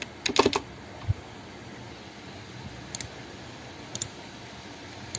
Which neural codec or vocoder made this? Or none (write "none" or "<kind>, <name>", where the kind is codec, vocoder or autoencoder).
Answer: none